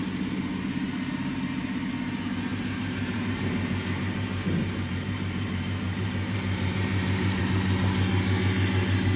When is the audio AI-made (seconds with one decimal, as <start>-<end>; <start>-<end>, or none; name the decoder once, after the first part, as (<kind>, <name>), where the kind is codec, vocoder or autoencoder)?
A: 2.5-7.4 (vocoder, BigVGAN v2)